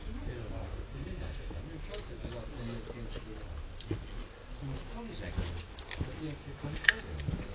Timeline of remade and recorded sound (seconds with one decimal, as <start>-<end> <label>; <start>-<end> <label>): 0.0-0.9 recorded; 0.9-1.6 remade; 1.6-6.4 recorded; 6.4-7.0 remade; 7.0-7.5 recorded